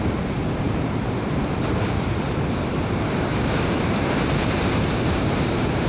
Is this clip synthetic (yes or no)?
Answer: yes